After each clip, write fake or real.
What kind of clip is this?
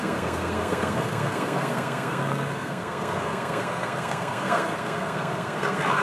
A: fake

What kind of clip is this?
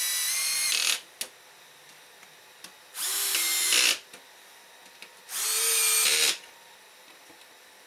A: real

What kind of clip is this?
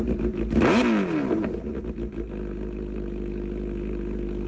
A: real